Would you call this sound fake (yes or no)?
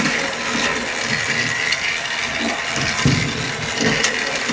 no